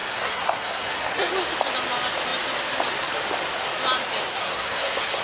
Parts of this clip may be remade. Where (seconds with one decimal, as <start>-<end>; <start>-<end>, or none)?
0.0-1.3; 4.3-5.2